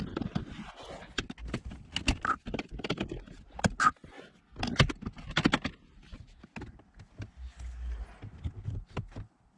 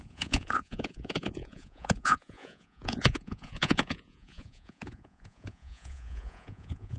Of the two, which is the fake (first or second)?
second